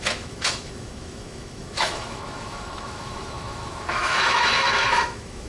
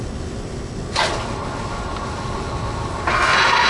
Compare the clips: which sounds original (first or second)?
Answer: second